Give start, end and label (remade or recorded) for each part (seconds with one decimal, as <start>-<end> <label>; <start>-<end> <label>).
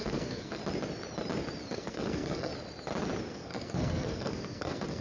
0.0-0.6 remade; 0.6-1.7 recorded; 1.7-2.5 remade; 2.5-3.3 recorded; 3.3-5.0 remade